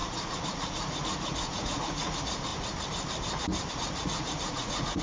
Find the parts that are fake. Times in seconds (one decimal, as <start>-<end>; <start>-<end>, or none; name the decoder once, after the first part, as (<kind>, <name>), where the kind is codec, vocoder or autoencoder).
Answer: 0.0-2.5 (vocoder, Vocos); 3.7-5.0